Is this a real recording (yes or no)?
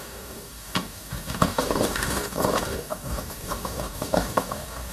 no